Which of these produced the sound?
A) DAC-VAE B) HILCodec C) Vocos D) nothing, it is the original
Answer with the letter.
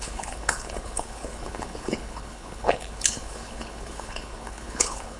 B